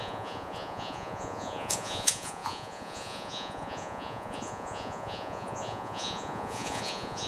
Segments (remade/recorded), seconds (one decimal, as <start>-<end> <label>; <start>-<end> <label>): 0.0-7.3 remade